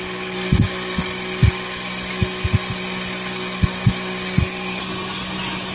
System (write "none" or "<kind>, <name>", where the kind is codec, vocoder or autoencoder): none